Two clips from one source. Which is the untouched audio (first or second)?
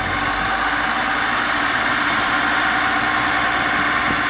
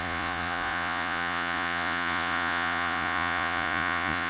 first